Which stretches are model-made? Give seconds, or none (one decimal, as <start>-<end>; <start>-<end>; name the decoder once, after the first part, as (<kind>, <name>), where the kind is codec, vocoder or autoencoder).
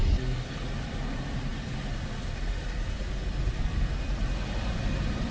none